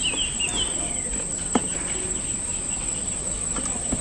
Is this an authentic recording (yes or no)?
yes